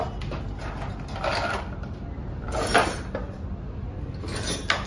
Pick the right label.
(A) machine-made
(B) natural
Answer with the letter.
B